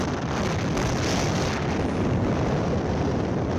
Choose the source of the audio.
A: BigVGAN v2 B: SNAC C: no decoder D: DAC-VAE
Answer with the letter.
C